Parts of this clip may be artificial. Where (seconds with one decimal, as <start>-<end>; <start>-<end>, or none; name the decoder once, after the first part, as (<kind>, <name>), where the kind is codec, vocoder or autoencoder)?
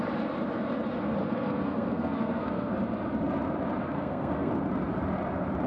1.2-2.7 (codec, SNAC); 3.8-4.5